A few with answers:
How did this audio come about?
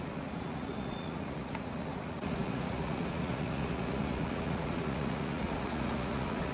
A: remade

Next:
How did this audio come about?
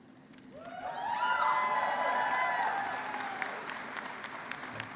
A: recorded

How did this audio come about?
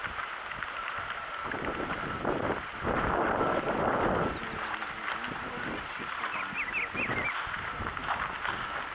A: recorded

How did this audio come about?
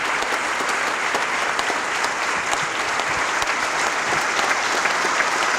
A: recorded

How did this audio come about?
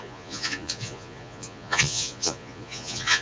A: remade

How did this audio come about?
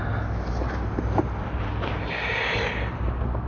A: recorded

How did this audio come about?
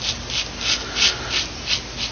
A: recorded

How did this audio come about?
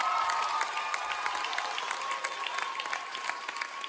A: recorded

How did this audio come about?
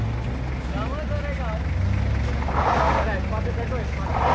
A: recorded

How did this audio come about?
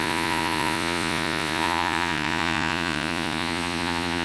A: remade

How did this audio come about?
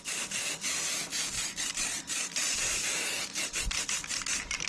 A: recorded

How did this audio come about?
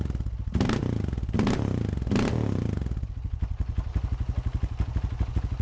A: recorded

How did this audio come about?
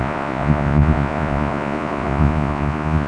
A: remade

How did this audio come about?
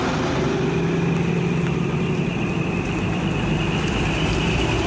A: recorded